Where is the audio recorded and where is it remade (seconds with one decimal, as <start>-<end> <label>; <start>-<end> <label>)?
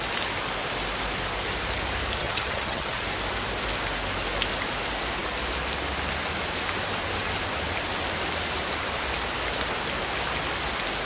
0.0-2.2 recorded; 2.2-3.0 remade; 3.0-11.1 recorded